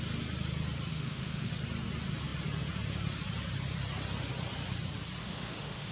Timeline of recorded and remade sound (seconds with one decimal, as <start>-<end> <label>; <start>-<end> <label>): 0.0-0.9 recorded; 0.9-1.5 remade; 1.5-5.2 recorded; 5.2-5.9 remade